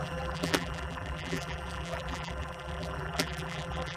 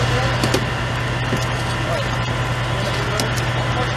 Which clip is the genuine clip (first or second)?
second